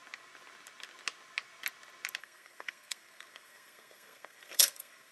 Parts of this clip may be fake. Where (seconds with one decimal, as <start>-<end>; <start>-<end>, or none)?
2.2-5.1